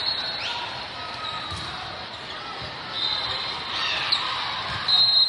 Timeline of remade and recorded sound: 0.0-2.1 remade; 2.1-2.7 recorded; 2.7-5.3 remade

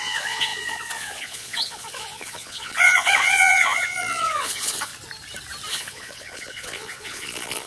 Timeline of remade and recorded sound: 0.0-4.9 remade; 4.9-5.7 recorded; 5.7-7.7 remade

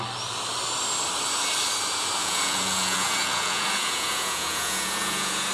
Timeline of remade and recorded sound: 0.0-2.2 recorded; 2.2-5.5 remade